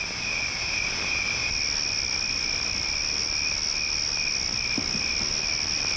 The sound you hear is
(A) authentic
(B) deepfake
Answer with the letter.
A